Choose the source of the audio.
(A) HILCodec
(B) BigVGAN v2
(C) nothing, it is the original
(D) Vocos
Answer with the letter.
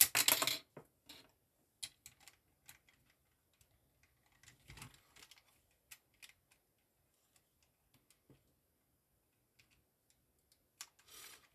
C